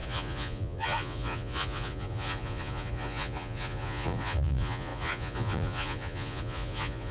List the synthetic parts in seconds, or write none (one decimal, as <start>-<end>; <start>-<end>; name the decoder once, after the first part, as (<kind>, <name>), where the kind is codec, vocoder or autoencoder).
0.0-7.1 (vocoder, Vocos)